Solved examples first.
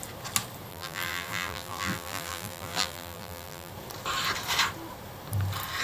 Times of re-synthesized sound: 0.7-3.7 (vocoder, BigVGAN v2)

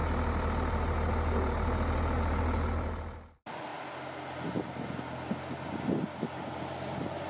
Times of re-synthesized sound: none

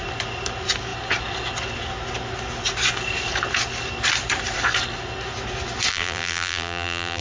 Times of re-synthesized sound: 5.9-7.2 (vocoder, BigVGAN v2)

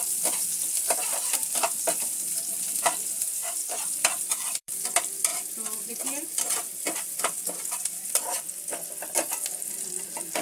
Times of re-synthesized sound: 0.0-10.4 (vocoder, BigVGAN v2)

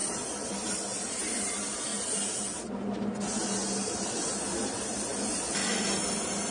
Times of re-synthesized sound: 0.0-1.9 (vocoder, BigVGAN v2); 5.8-6.5

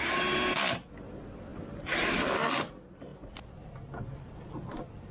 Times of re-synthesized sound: 1.5-2.7 (vocoder, BigVGAN v2); 3.1-3.7

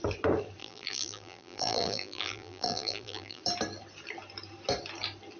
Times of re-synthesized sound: 0.6-3.4 (vocoder, BigVGAN v2)